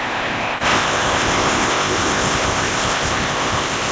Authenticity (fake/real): fake